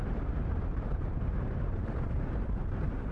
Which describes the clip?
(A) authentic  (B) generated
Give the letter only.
B